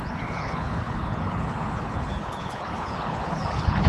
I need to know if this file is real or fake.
fake